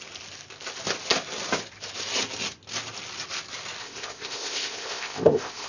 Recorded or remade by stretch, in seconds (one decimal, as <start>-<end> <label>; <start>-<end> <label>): 0.0-3.8 recorded; 3.8-5.7 remade